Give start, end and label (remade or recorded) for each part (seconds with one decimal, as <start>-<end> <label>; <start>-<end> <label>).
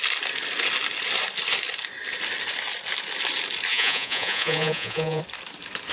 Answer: 0.0-3.7 recorded; 3.7-5.2 remade; 5.2-5.9 recorded